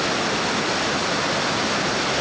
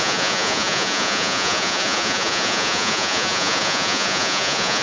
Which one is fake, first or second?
second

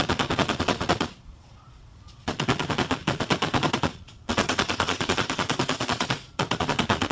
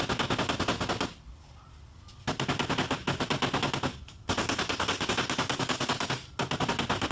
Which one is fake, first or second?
first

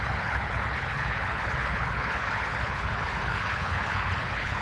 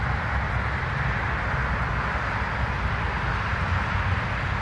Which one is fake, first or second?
first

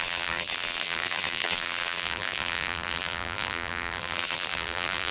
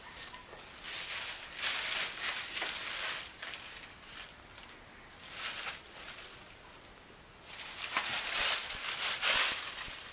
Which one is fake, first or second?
first